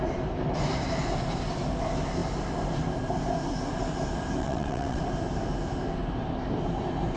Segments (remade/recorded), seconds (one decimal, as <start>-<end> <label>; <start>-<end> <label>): 0.0-4.4 recorded; 4.4-5.0 remade; 5.0-7.2 recorded